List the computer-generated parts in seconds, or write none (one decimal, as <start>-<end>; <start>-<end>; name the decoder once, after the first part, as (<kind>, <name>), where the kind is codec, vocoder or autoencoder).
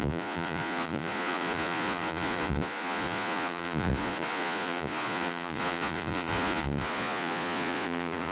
0.0-8.3 (vocoder, Vocos)